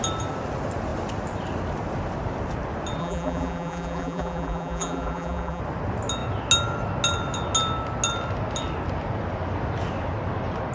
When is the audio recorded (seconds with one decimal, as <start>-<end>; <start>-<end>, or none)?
0.0-3.0; 5.6-10.7